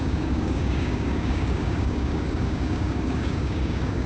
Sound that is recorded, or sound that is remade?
remade